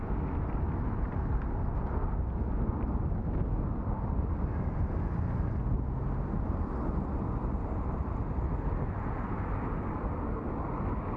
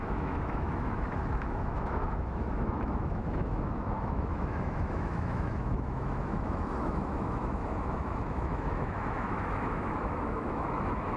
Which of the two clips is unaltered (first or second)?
first